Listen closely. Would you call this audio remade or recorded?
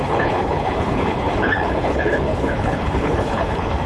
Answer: remade